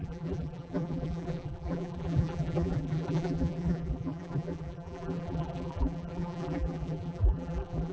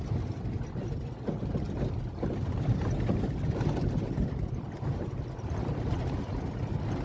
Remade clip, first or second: first